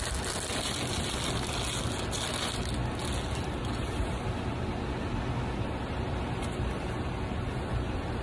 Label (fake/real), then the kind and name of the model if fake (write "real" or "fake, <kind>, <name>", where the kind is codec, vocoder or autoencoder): real